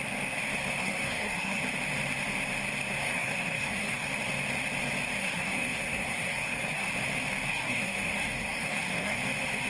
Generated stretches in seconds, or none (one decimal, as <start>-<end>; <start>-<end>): 0.8-1.6; 3.0-4.1; 5.2-6.9; 7.5-9.2